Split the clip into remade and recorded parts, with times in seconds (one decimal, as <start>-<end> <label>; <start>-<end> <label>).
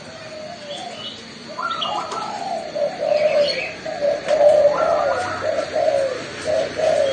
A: 0.0-1.4 recorded; 1.4-5.7 remade; 5.7-7.1 recorded